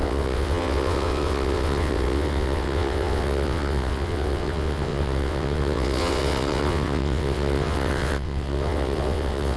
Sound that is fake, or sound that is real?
fake